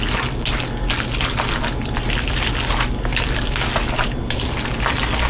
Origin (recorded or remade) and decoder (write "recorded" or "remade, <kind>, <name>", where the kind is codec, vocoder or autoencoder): recorded